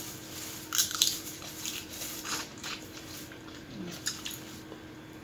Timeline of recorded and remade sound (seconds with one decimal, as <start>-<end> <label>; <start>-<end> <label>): 0.0-0.8 recorded; 0.8-3.9 remade; 3.9-5.2 recorded